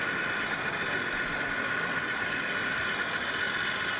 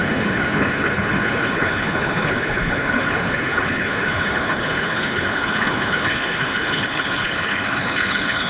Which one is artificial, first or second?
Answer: second